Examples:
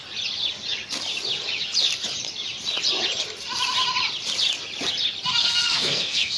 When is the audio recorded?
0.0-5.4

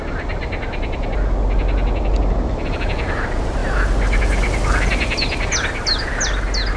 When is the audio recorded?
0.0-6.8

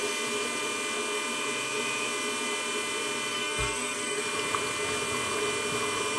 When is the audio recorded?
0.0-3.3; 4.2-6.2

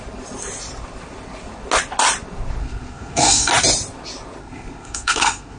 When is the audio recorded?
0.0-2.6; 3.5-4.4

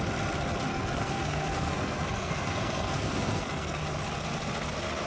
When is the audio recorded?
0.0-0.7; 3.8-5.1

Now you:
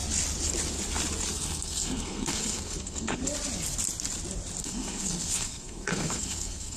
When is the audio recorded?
0.0-1.3; 3.2-4.6

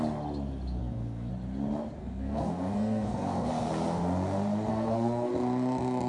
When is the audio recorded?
0.0-0.8; 1.3-2.0; 3.5-4.7; 5.3-6.1

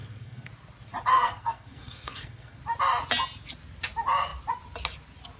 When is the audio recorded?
0.5-1.1; 2.6-5.4